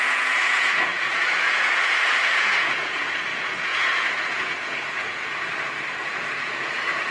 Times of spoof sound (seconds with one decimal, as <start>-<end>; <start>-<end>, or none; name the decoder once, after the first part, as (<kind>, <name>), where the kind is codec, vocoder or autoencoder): 0.0-5.5 (vocoder, Vocos); 6.0-7.1